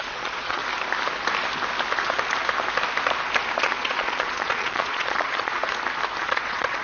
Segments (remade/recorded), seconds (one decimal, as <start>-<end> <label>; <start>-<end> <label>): 0.0-0.6 remade; 0.6-3.6 recorded; 3.6-5.6 remade; 5.6-6.2 recorded; 6.2-6.8 remade